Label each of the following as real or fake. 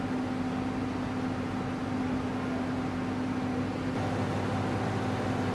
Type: real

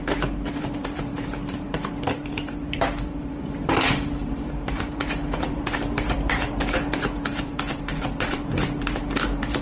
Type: fake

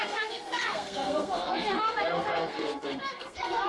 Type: fake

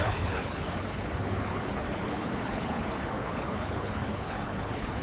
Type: fake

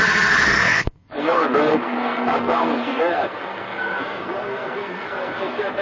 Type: fake